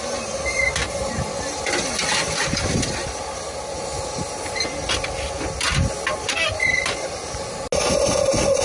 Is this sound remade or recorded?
recorded